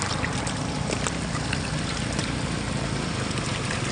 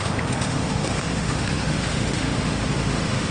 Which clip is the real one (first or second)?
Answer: first